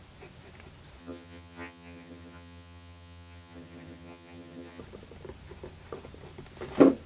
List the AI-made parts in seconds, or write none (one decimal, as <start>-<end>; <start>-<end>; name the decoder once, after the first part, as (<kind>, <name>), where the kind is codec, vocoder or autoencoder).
1.0-4.8 (vocoder, HiFi-GAN)